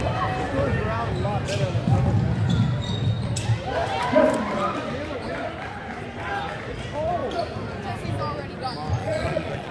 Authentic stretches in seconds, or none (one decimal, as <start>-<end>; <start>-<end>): 0.0-9.0